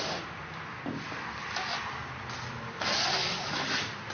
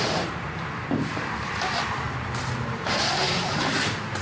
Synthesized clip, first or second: second